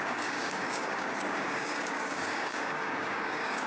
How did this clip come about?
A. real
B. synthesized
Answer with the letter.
B